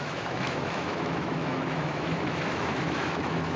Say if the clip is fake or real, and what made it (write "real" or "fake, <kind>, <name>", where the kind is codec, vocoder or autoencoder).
fake, autoencoder, DAC-VAE